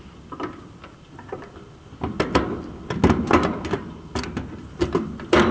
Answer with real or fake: real